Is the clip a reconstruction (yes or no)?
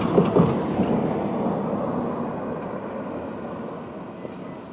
no